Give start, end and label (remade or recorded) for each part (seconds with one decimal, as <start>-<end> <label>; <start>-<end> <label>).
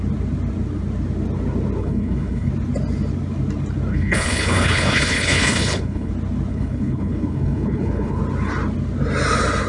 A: 0.0-1.8 recorded; 1.8-2.5 remade; 2.5-3.9 recorded; 3.9-6.1 remade; 6.1-6.5 recorded; 6.5-8.2 remade; 8.2-9.7 recorded